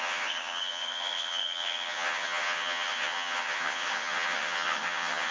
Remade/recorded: remade